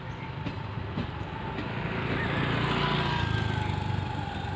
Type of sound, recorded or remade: recorded